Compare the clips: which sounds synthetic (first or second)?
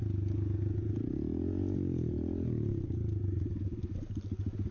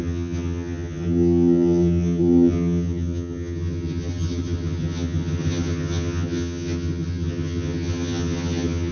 second